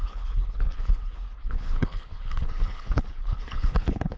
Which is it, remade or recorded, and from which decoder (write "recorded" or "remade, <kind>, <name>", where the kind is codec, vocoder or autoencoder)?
remade, codec, HILCodec